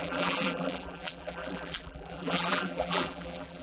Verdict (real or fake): fake